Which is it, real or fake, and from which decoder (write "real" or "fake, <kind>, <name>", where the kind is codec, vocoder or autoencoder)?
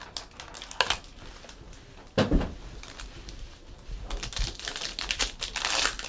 real